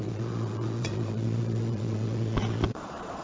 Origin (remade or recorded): remade